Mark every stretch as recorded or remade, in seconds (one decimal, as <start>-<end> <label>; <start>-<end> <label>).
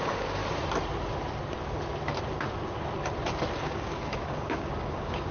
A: 0.0-0.4 remade; 0.4-3.6 recorded; 3.6-5.3 remade